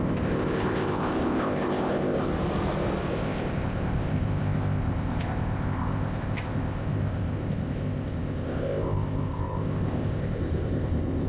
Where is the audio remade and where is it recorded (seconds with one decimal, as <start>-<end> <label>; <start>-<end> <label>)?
0.0-2.3 remade; 2.3-3.1 recorded; 3.1-11.3 remade